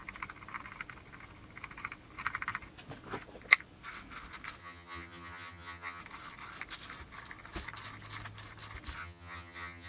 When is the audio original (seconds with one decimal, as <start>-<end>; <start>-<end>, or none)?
0.0-4.6; 6.0-9.0